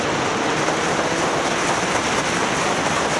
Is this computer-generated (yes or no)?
no